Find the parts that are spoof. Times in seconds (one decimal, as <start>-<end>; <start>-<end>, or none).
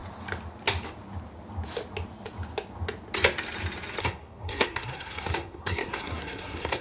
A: 4.0-6.8